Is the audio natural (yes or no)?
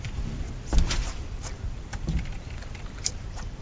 no